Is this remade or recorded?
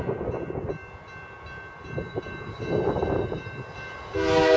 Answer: recorded